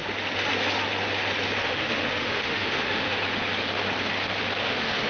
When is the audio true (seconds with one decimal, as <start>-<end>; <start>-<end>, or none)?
0.0-1.6; 3.2-4.6